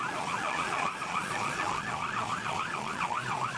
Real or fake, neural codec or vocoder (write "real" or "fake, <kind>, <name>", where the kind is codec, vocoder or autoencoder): fake, vocoder, Vocos